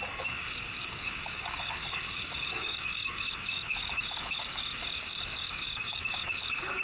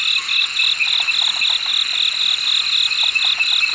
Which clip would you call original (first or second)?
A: second